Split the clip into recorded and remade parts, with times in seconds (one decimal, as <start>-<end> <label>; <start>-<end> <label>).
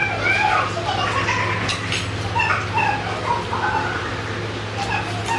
0.0-5.4 recorded